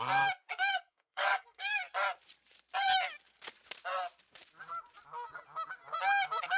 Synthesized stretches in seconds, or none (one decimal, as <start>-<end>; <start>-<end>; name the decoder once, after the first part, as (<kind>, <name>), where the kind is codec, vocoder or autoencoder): 0.5-1.8 (codec, SNAC)